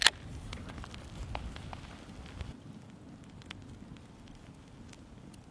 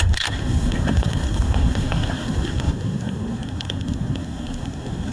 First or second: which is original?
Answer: first